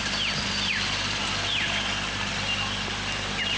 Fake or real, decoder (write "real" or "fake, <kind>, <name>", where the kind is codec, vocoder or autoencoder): real